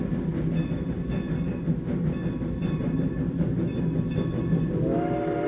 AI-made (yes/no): no